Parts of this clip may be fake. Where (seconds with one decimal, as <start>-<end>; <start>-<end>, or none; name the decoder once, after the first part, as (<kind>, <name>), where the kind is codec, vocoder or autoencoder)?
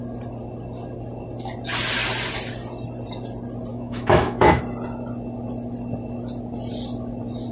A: 3.7-4.6 (autoencoder, DAC-VAE)